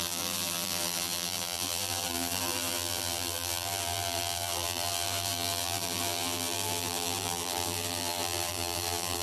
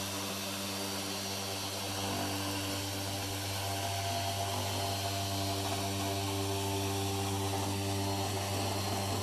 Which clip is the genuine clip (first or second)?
second